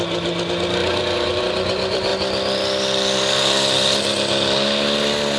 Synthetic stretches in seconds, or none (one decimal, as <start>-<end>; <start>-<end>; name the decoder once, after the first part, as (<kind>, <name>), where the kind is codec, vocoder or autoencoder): 0.8-1.4 (vocoder, BigVGAN v2)